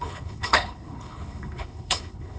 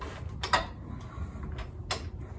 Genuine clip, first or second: second